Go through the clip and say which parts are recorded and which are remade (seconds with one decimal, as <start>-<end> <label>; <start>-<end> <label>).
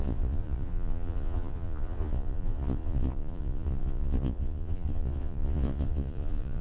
0.0-6.6 remade